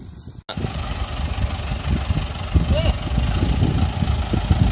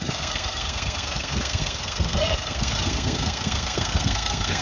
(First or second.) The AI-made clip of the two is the second